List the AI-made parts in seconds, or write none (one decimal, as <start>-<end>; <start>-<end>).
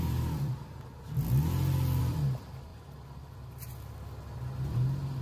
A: 0.0-1.0; 2.0-2.7